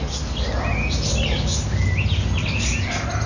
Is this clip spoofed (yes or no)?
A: no